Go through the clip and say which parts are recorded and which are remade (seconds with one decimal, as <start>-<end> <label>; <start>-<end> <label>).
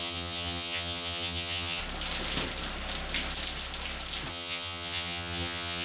0.0-1.8 remade; 1.8-4.3 recorded; 4.3-5.8 remade